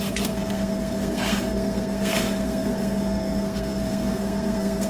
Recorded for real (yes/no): no